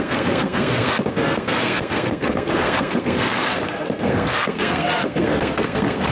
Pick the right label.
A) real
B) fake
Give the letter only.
B